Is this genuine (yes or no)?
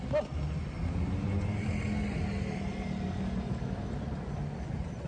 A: yes